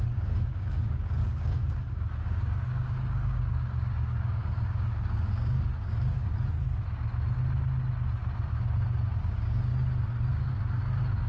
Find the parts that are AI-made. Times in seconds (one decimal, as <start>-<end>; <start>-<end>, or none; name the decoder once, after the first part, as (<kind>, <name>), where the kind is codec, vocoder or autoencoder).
0.0-6.3 (codec, DAC); 9.2-9.7; 10.3-11.3